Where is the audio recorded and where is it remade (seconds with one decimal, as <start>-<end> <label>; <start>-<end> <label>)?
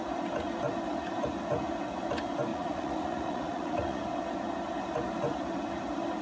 0.0-2.5 recorded; 2.5-4.0 remade; 4.0-6.2 recorded